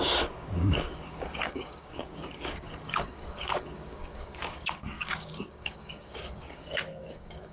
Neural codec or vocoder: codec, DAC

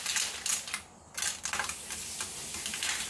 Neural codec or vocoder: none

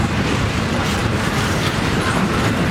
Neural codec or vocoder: vocoder, BigVGAN v2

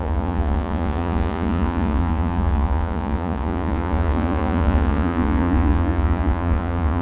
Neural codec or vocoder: vocoder, Vocos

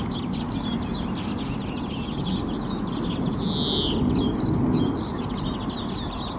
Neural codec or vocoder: none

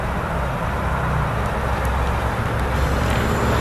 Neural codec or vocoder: none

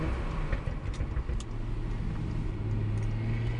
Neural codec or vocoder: none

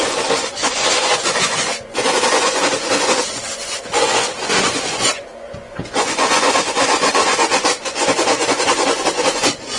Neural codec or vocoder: vocoder, Vocos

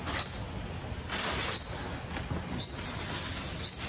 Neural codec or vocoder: none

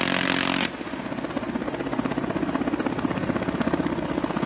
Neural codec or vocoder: none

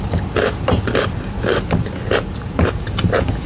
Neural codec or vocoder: none